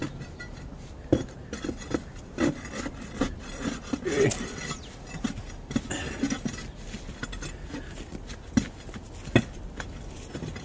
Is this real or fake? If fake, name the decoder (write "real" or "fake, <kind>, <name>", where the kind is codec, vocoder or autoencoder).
real